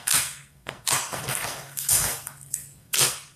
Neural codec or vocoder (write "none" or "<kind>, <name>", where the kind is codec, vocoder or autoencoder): codec, SNAC